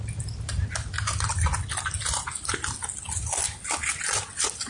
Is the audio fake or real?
real